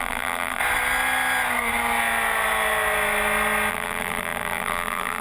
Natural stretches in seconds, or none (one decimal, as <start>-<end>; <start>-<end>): 0.6-3.7